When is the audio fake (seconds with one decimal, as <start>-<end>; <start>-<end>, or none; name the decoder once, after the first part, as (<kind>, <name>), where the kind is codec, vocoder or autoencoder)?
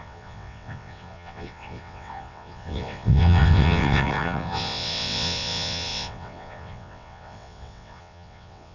0.0-8.7 (vocoder, WaveNeXt)